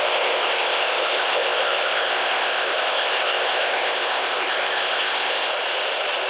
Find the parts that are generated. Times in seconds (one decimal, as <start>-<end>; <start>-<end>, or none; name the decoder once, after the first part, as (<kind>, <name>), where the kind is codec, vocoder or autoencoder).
0.0-5.5 (codec, ZipCodec)